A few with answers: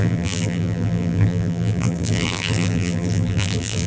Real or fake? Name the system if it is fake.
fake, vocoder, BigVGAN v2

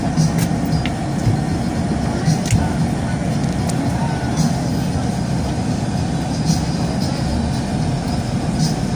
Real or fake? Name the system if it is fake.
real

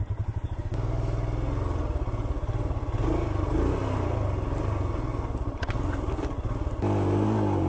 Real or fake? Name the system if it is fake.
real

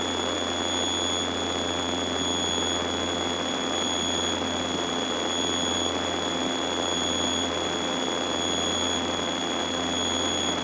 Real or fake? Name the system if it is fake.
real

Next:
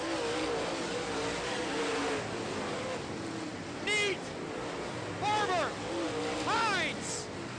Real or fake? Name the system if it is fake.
real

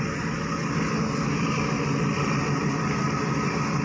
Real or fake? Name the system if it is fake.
real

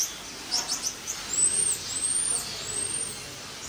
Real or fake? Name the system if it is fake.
real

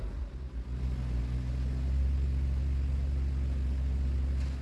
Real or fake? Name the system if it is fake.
real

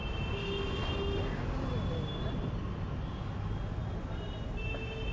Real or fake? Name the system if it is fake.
real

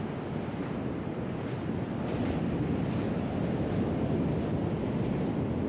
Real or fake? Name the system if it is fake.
real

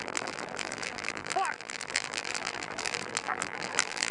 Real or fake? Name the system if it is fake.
fake, vocoder, BigVGAN v2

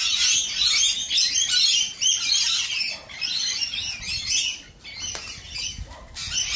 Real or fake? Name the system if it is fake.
real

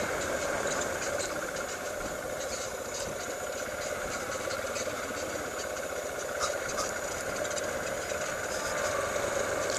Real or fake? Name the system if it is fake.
real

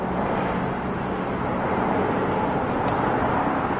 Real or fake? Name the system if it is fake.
real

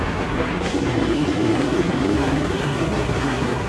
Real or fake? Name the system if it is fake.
fake, codec, SNAC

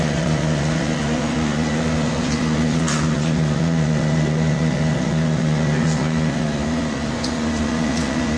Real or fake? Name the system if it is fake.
fake, vocoder, Vocos